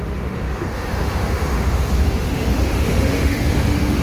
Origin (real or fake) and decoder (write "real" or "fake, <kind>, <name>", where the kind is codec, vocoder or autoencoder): fake, autoencoder, DAC-VAE